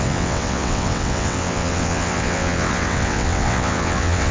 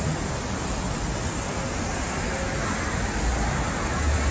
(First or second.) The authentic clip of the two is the second